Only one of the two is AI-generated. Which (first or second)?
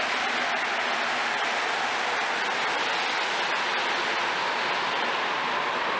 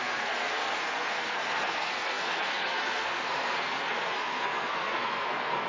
second